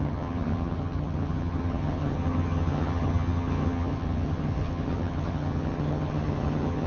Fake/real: fake